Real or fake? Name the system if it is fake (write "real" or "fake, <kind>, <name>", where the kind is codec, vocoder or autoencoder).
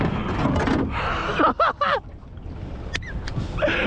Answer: real